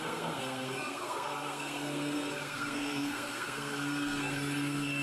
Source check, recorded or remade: remade